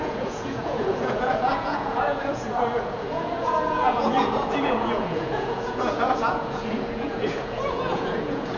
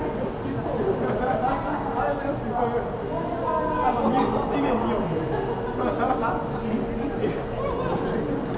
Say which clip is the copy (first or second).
first